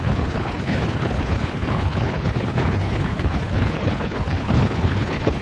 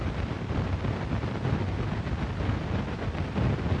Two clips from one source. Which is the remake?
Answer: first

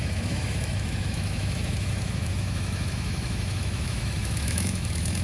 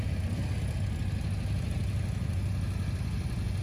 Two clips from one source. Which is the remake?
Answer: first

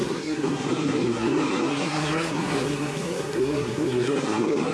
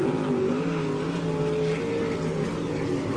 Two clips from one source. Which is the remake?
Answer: first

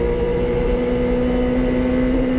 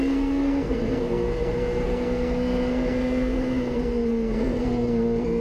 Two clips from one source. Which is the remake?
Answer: second